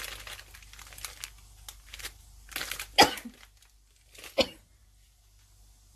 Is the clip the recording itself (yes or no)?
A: yes